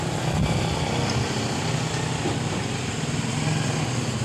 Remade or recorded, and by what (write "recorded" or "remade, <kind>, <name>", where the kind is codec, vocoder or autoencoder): recorded